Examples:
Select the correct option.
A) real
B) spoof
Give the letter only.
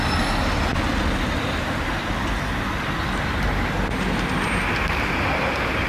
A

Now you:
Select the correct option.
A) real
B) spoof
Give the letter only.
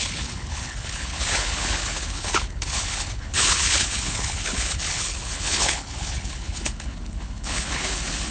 B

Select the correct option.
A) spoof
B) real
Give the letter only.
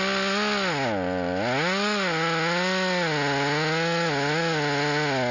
B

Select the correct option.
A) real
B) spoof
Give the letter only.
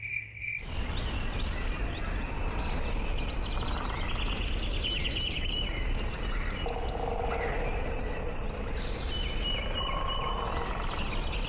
A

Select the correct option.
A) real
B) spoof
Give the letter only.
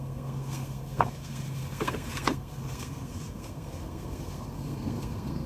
B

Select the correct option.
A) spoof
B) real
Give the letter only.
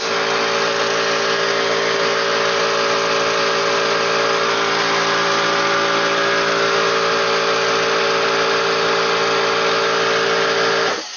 B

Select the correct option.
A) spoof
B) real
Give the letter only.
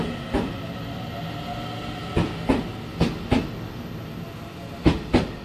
B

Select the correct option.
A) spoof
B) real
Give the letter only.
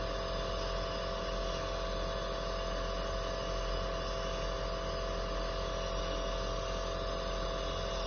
B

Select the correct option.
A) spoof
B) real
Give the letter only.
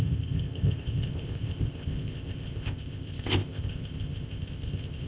A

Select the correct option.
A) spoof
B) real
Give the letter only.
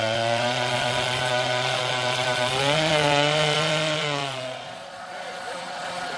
A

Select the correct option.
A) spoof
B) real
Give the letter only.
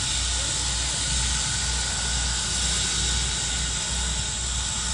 B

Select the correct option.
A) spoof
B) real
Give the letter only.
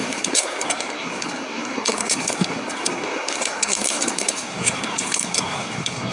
A